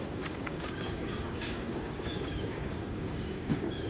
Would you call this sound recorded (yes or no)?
no